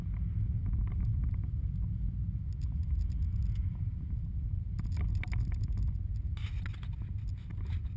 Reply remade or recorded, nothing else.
recorded